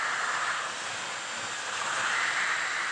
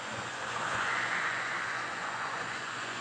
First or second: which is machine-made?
second